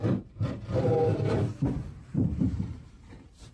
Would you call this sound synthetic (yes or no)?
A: yes